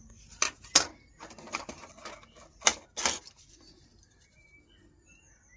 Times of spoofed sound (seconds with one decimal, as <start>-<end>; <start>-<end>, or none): none